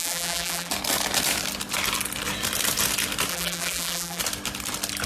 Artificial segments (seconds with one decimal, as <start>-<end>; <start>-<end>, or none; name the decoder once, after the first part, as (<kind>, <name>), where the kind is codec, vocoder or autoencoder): 0.0-0.7 (vocoder, BigVGAN v2); 3.3-4.2